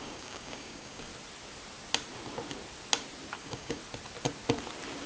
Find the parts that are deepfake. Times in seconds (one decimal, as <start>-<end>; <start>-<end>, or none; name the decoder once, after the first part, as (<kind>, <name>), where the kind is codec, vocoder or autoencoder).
0.0-1.1 (codec, DAC); 3.4-3.8